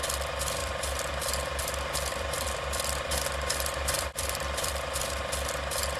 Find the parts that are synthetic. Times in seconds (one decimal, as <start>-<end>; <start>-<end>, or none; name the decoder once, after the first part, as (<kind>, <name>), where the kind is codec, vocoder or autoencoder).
0.6-1.6 (vocoder, BigVGAN v2); 2.1-5.0